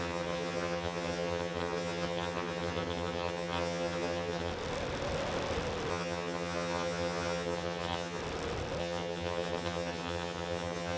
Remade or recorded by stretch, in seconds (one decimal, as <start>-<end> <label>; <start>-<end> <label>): 0.0-4.5 remade; 4.5-5.9 recorded; 5.9-8.2 remade; 8.2-8.8 recorded; 8.8-11.0 remade